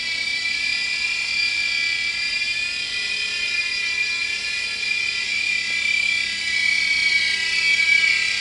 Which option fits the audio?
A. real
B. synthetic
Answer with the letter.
A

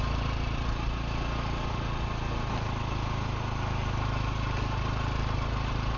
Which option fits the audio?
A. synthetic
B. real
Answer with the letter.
B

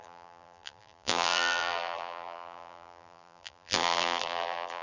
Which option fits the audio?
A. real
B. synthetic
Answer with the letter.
B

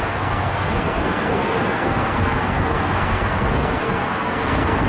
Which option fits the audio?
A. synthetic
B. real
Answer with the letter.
A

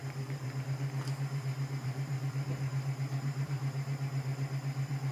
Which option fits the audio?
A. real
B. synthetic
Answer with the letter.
B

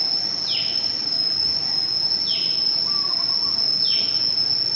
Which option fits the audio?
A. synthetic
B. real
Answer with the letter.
B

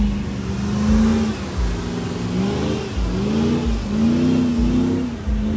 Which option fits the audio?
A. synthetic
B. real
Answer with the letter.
B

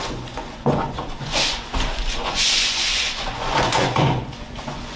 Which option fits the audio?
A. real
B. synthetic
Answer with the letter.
B